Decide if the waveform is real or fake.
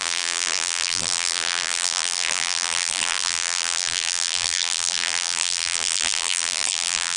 fake